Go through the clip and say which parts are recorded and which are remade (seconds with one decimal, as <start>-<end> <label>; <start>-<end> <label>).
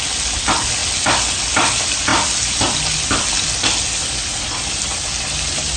0.0-5.8 recorded